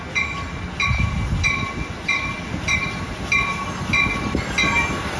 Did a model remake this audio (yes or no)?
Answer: no